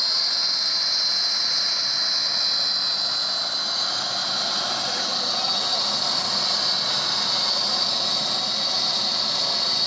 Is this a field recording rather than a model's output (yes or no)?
yes